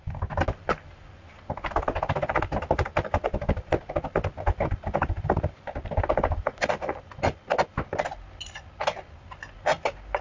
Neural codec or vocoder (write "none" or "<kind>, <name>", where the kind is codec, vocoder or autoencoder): none